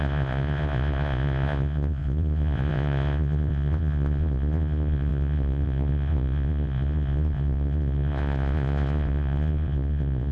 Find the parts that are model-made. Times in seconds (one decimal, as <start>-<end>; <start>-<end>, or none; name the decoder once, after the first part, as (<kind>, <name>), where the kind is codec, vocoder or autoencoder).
0.0-10.3 (vocoder, Vocos)